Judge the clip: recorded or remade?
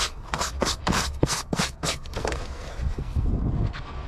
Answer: remade